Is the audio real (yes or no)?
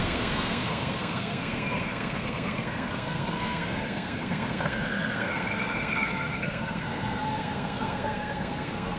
no